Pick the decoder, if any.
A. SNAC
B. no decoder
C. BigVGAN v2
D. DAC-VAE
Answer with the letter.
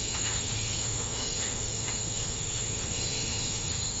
D